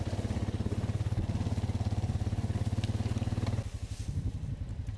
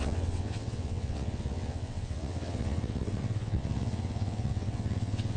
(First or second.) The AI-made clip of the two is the second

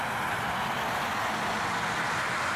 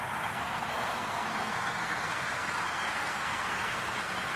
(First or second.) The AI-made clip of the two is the second